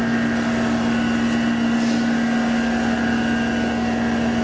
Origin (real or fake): real